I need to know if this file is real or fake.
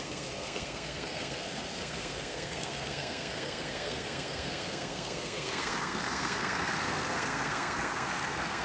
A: fake